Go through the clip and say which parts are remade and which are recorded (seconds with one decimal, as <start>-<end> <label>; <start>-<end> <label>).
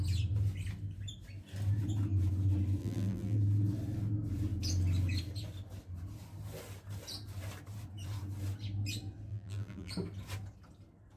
0.0-2.8 recorded; 2.8-3.4 remade; 3.4-9.3 recorded; 9.3-9.9 remade; 9.9-11.2 recorded